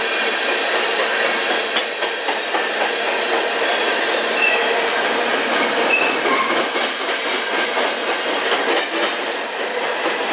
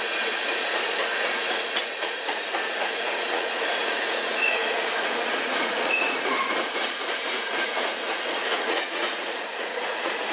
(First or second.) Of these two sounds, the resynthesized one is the second